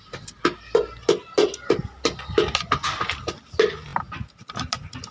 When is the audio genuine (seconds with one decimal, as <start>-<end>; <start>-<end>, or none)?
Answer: 0.0-5.1